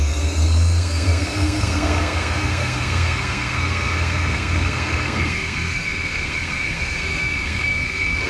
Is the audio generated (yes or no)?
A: yes